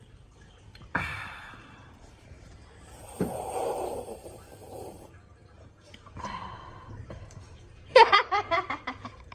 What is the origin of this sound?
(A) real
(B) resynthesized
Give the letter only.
B